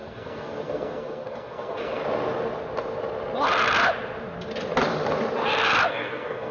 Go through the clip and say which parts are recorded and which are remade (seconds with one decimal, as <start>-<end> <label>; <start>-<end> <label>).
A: 0.0-2.0 remade; 2.0-5.9 recorded; 5.9-6.5 remade